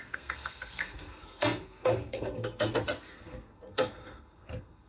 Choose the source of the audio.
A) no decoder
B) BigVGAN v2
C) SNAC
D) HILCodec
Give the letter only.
C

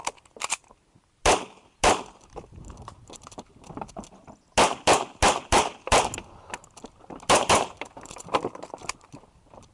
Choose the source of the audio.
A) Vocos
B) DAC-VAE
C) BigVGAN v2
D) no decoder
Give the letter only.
D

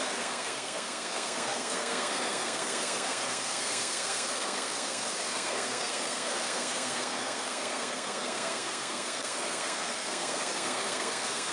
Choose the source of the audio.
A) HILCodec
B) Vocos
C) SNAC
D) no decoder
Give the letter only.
C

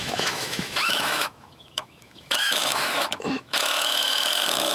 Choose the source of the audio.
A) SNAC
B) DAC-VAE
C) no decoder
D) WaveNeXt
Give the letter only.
B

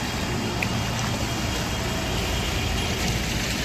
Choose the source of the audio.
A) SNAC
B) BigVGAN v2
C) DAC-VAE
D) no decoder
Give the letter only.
D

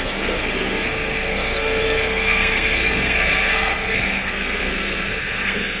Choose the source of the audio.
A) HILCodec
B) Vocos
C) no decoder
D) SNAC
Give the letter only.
D